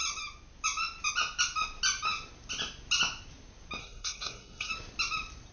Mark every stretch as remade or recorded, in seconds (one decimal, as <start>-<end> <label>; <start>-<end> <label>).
0.0-3.8 recorded; 3.8-4.7 remade; 4.7-5.5 recorded